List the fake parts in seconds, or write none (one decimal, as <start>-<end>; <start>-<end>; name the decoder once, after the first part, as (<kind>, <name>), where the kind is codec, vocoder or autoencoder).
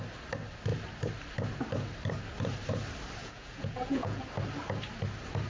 3.2-4.2 (vocoder, Vocos)